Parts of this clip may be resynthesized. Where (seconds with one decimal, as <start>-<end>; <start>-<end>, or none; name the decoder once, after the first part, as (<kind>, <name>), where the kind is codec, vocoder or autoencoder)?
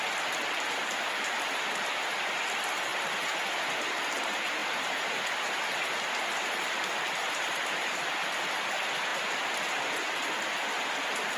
4.6-8.4 (vocoder, BigVGAN v2)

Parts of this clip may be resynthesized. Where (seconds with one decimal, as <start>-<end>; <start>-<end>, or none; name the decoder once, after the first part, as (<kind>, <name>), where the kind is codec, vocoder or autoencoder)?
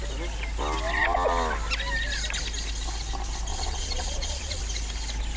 3.5-4.6 (vocoder, Vocos)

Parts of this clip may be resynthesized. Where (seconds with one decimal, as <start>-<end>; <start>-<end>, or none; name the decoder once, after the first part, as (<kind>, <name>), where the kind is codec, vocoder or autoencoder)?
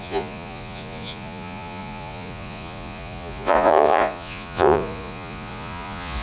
0.0-6.2 (vocoder, Vocos)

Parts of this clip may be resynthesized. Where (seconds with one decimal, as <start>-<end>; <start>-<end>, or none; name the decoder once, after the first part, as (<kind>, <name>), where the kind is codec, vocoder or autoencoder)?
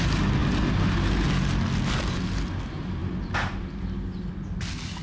none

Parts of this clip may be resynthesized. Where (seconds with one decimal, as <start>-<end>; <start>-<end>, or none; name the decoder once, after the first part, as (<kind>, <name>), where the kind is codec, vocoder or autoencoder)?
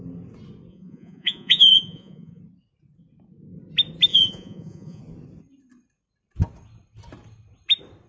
0.7-2.4 (vocoder, Vocos); 4.1-5.0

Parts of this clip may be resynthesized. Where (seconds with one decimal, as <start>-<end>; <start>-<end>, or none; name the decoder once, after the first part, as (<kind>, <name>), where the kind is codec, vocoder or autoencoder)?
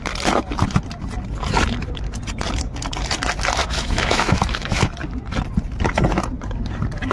3.6-4.9 (autoencoder, DAC-VAE)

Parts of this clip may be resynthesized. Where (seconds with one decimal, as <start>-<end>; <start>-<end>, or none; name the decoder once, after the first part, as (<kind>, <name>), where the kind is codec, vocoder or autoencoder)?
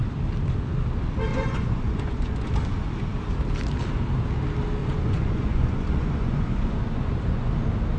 1.3-2.5 (vocoder, Vocos); 4.8-7.5